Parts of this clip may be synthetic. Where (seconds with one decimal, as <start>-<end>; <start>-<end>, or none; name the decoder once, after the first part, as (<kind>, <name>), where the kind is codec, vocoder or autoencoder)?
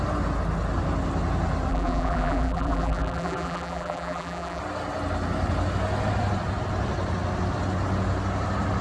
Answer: 1.7-4.6 (vocoder, BigVGAN v2)